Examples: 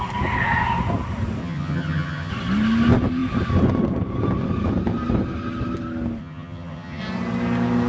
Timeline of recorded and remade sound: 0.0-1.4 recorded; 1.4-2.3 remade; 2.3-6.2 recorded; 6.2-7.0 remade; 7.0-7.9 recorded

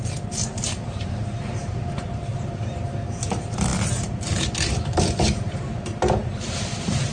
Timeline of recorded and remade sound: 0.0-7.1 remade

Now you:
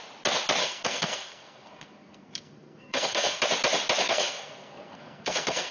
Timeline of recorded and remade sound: 0.0-0.6 recorded; 0.6-3.4 remade; 3.4-4.0 recorded; 4.0-5.7 remade

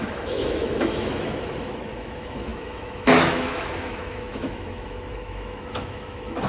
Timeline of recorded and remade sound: 0.0-6.5 remade